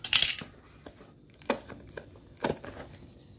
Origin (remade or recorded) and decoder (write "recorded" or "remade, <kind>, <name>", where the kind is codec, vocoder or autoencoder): recorded